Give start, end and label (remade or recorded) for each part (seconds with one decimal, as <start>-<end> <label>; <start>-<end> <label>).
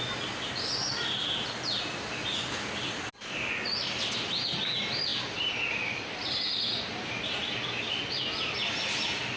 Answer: 0.0-9.4 recorded